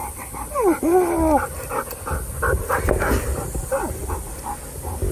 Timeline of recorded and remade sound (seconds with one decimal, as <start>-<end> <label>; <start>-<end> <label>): 0.0-5.1 recorded